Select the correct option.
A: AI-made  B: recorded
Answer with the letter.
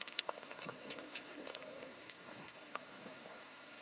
A